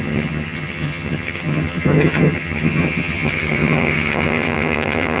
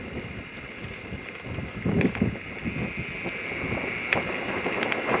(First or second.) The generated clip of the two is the first